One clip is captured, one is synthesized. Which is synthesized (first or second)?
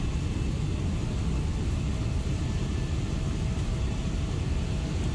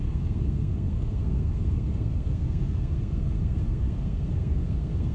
second